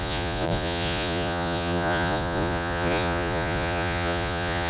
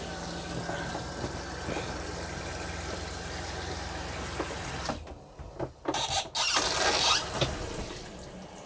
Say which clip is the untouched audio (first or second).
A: second